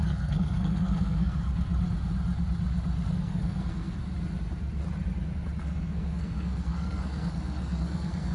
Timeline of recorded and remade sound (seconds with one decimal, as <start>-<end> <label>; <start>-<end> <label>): 0.0-1.7 remade; 1.7-3.1 recorded; 3.1-4.0 remade; 4.0-5.6 recorded; 5.6-8.3 remade